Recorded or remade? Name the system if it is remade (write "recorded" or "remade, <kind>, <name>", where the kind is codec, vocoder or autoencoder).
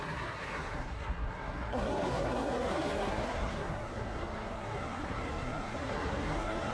remade, codec, SNAC